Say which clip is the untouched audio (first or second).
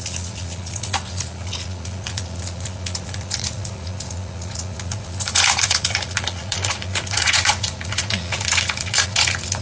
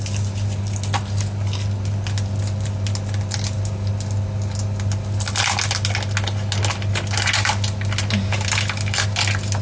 second